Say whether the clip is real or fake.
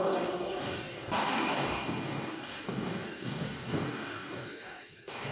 fake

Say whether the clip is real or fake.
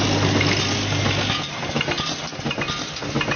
real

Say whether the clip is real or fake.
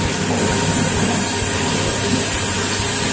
real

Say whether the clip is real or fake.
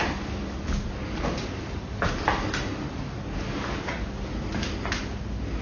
real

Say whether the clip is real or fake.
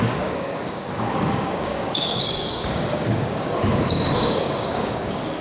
fake